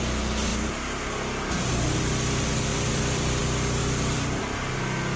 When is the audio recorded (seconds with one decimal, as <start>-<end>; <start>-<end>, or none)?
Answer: 0.0-2.7; 3.4-3.8; 4.4-5.2